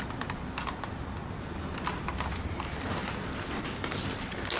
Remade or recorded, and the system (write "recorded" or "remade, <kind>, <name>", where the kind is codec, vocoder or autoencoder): recorded